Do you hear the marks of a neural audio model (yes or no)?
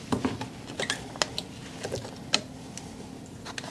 no